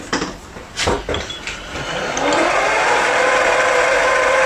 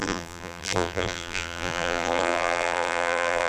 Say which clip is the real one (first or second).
first